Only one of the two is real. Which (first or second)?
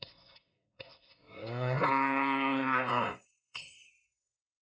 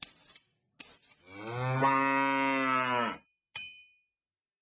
second